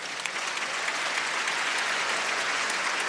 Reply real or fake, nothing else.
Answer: fake